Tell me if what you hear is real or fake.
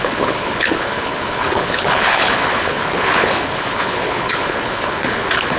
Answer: fake